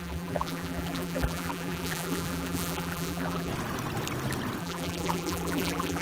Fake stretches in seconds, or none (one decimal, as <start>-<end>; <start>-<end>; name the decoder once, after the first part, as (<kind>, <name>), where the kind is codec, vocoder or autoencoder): 0.0-3.5 (vocoder, BigVGAN v2); 4.6-6.0